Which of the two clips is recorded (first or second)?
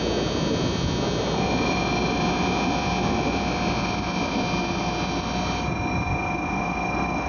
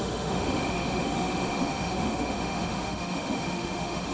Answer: first